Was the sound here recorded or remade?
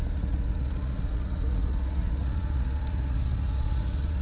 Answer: remade